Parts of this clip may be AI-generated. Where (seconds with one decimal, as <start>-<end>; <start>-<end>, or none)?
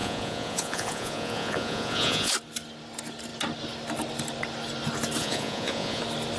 0.0-2.3; 5.2-6.0